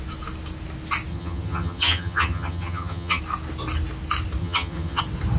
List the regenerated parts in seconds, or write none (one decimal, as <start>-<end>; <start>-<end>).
1.1-3.2; 4.4-5.0